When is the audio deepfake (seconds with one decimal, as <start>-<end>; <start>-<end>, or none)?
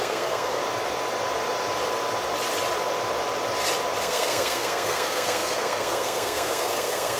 0.0-0.6; 4.0-7.2